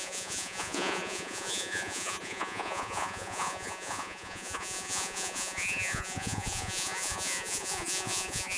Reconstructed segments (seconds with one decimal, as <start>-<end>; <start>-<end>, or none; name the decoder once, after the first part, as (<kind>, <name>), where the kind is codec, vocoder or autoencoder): 0.0-8.6 (vocoder, Vocos)